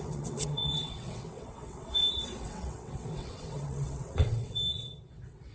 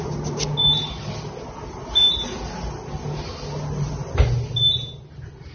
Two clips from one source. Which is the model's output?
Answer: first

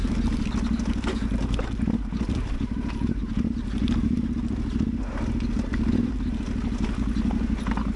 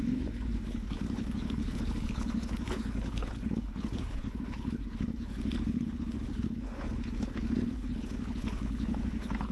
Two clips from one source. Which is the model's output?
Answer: second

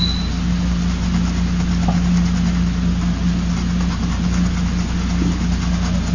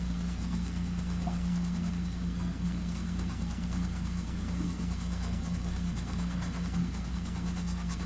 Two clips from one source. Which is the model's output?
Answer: second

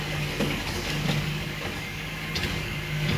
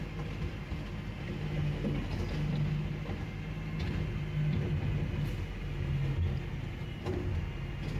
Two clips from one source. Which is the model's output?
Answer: first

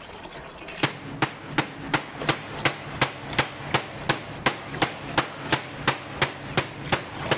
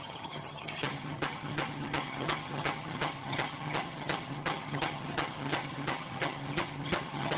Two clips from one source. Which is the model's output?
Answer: second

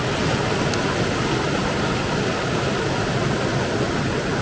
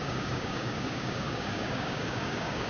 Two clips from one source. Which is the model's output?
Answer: second